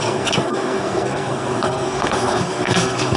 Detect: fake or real fake